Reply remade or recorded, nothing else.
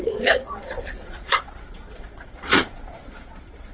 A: remade